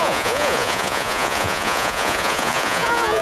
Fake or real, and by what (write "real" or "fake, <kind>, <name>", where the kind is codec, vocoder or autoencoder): fake, vocoder, Vocos